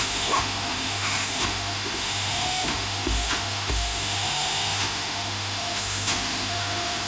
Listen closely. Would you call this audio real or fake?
fake